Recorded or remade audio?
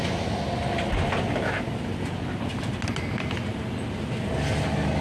recorded